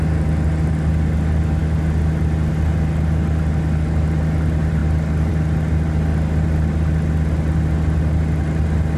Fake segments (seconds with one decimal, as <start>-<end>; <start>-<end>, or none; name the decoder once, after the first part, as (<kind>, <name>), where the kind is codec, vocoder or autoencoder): none